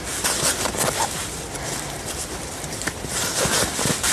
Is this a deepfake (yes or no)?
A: yes